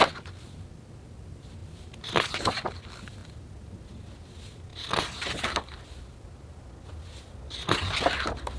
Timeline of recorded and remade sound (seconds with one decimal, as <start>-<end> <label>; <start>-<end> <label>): 0.0-1.6 recorded; 1.6-2.5 remade; 2.5-3.2 recorded; 3.2-3.9 remade; 3.9-8.6 recorded